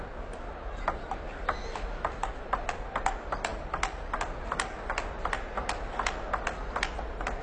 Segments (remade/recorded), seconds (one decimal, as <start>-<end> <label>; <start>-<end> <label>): 0.0-7.4 recorded